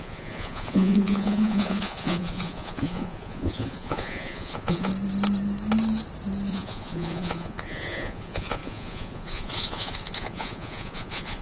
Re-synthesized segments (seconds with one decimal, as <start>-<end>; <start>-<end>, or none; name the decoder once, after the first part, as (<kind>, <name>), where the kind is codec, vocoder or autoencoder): 0.0-4.9 (vocoder, Vocos); 6.5-11.4